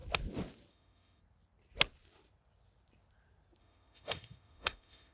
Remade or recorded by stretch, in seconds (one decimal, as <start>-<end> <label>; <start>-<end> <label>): 0.0-0.7 recorded; 0.7-1.2 remade; 1.2-3.6 recorded; 3.6-5.1 remade